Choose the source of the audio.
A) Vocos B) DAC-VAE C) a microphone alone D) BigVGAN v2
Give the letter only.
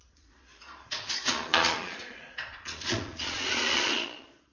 A